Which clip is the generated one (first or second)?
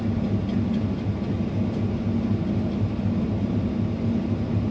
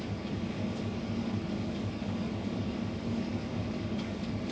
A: second